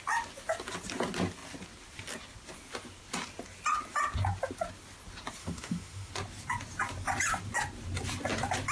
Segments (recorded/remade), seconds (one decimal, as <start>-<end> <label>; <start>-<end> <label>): 0.0-5.4 recorded; 5.4-6.1 remade; 6.1-8.7 recorded